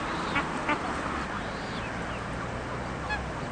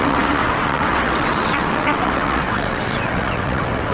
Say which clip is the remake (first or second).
second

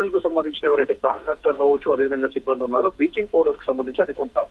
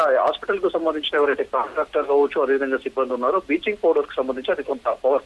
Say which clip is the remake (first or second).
first